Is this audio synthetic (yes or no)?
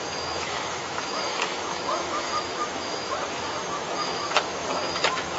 yes